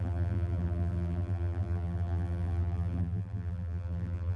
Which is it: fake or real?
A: fake